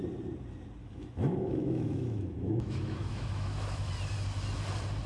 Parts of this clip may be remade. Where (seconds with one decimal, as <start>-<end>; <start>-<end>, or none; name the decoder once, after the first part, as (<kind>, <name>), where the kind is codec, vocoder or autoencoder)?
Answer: 0.8-3.9 (autoencoder, DAC-VAE)